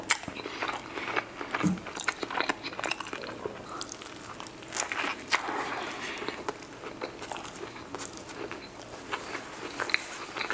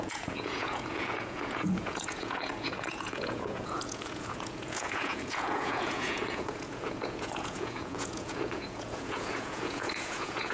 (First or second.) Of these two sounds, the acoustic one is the first